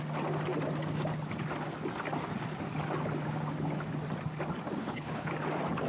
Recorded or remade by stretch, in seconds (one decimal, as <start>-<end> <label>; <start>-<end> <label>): 0.0-4.8 recorded; 4.8-5.3 remade; 5.3-5.9 recorded

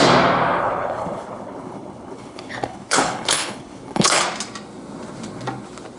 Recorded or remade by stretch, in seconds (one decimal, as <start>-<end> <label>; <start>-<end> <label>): 0.0-0.6 recorded; 0.6-4.2 remade; 4.2-6.0 recorded

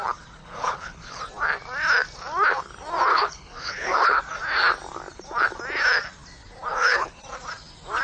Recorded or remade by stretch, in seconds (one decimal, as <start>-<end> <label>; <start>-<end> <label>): 0.0-0.4 recorded; 0.4-1.2 remade; 1.2-3.1 recorded; 3.1-4.2 remade; 4.2-6.7 recorded; 6.7-7.2 remade; 7.2-8.0 recorded

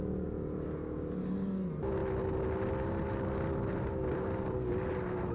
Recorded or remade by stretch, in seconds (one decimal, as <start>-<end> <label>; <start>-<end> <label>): 0.0-5.3 recorded

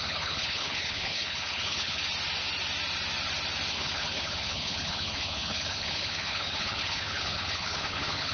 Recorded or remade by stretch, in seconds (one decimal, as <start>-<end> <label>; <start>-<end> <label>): 0.0-2.0 remade; 2.0-3.7 recorded; 3.7-8.3 remade

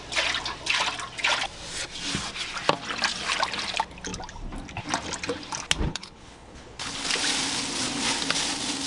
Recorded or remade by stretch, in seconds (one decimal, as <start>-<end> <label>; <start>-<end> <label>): 0.0-5.9 recorded; 5.9-7.0 remade; 7.0-8.9 recorded

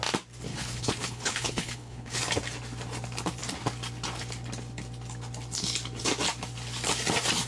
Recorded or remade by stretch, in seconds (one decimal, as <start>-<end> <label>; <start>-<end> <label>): 0.0-0.5 recorded; 0.5-2.2 remade; 2.2-7.5 recorded

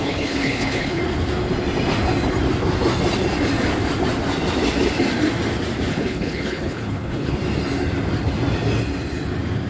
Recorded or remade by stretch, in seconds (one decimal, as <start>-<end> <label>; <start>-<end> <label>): 0.0-1.0 remade; 1.0-5.9 recorded; 5.9-7.4 remade; 7.4-9.7 recorded